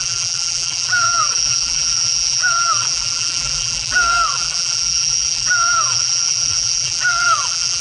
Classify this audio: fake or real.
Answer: fake